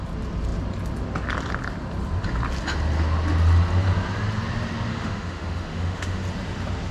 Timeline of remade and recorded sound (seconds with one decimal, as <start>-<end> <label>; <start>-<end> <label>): 0.0-4.9 recorded; 4.9-6.2 remade; 6.2-6.9 recorded

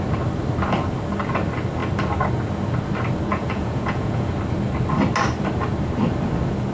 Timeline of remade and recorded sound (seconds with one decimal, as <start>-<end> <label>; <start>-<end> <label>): 0.0-3.3 recorded; 3.3-4.3 remade; 4.3-6.7 recorded

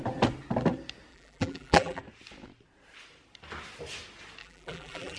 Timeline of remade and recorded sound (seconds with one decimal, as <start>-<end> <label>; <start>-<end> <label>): 0.0-1.1 recorded; 1.1-2.0 remade; 2.0-4.4 recorded; 4.4-5.2 remade

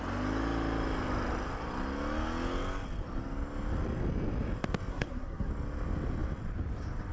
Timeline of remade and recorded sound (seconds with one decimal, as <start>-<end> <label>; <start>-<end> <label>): 0.0-4.9 recorded; 4.9-5.5 remade; 5.5-7.1 recorded

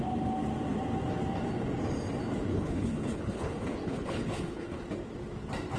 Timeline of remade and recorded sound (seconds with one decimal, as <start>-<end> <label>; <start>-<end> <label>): 0.0-2.5 recorded; 2.5-4.8 remade; 4.8-5.8 recorded

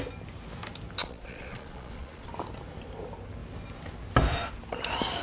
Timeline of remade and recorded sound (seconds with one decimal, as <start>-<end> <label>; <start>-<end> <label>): 0.0-1.0 recorded; 1.0-2.3 remade; 2.3-5.2 recorded

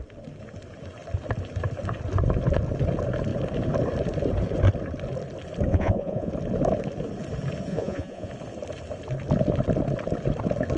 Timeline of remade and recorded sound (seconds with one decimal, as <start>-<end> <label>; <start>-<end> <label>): 0.0-5.7 recorded; 5.7-6.3 remade; 6.3-7.7 recorded; 7.7-8.3 remade; 8.3-10.8 recorded

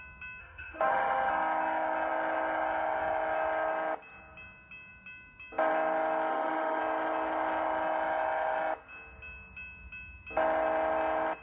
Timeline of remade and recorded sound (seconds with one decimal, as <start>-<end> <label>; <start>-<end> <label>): 0.0-0.4 recorded; 0.4-1.3 remade; 1.3-6.3 recorded; 6.3-6.8 remade; 6.8-11.4 recorded